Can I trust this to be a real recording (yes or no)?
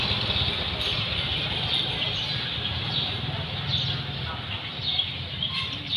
yes